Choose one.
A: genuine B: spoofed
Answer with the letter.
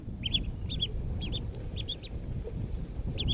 A